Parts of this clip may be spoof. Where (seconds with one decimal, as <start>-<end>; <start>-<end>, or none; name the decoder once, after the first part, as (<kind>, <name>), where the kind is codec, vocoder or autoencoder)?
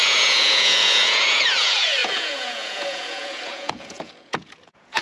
0.0-5.0 (vocoder, Vocos)